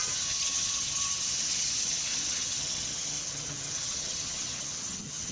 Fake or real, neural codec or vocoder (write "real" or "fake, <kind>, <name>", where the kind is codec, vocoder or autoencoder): fake, vocoder, HiFi-GAN